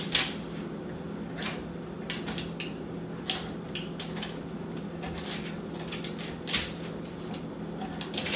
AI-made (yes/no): no